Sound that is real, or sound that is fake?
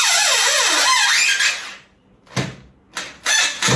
real